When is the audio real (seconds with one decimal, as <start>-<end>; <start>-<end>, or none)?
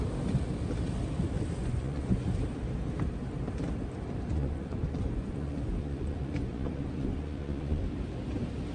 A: 0.0-1.6; 2.2-4.3; 7.8-8.7